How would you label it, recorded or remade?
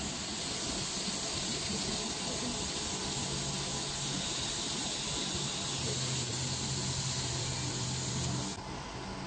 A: recorded